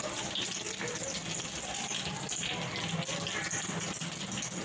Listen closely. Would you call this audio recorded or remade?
recorded